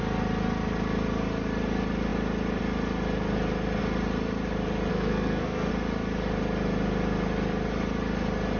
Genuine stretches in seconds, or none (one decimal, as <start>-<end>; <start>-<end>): 0.0-4.9; 5.7-8.6